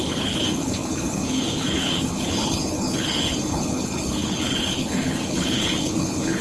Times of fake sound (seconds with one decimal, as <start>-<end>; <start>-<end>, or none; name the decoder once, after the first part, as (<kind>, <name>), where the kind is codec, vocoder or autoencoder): 0.0-6.4 (codec, HILCodec)